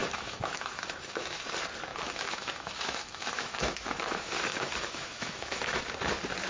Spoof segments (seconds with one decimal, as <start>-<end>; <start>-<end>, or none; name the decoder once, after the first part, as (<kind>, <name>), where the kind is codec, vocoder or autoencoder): 0.0-1.4 (autoencoder, DAC-VAE); 1.9-5.8